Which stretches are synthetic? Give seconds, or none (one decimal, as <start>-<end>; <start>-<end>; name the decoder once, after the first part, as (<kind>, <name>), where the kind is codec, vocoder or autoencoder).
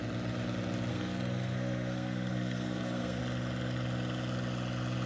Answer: 0.9-3.2 (codec, SNAC)